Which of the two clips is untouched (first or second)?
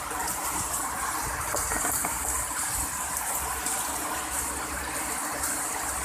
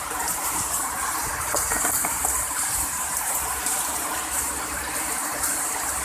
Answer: first